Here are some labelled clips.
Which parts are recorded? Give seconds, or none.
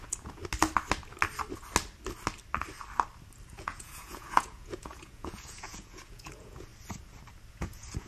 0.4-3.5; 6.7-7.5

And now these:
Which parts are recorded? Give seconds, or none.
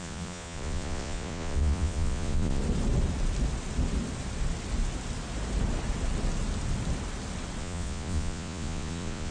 2.6-7.6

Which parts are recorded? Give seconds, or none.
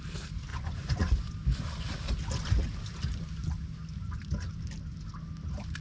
0.0-0.5; 1.1-5.8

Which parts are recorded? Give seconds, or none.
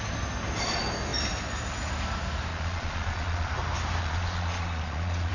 0.0-2.5; 3.5-4.0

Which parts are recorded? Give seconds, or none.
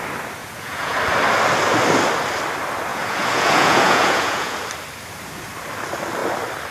0.0-0.4; 1.0-2.9; 4.6-6.7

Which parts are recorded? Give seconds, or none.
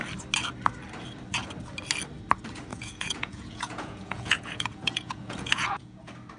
0.0-2.7; 6.0-6.4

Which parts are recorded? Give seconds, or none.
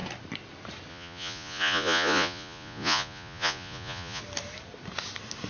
0.0-0.9; 4.2-5.5